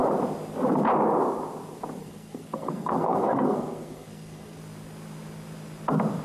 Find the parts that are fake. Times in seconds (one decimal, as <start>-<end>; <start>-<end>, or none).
2.0-4.6